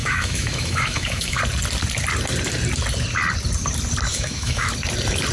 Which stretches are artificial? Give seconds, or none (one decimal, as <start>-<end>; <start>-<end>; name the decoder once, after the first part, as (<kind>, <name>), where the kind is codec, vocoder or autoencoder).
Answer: 0.0-1.4 (autoencoder, DAC-VAE); 4.1-4.7